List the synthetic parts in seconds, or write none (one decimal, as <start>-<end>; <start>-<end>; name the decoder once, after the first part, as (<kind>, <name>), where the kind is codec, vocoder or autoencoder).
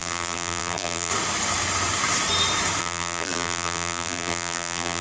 0.0-1.1 (vocoder, BigVGAN v2); 2.8-5.0